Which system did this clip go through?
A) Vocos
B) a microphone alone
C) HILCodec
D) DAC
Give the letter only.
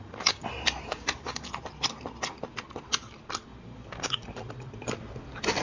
B